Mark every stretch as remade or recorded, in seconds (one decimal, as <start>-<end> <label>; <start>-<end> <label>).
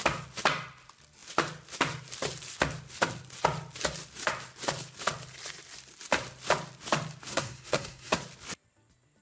0.0-7.3 recorded; 7.3-8.2 remade; 8.2-9.2 recorded